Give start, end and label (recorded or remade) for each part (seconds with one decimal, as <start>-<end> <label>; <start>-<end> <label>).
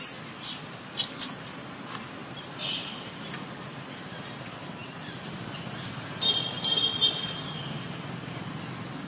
0.0-9.1 recorded